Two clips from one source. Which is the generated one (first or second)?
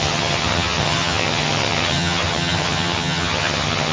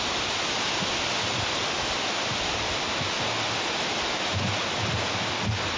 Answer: first